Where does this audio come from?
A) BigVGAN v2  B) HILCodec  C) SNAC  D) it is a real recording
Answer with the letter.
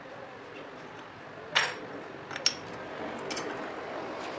D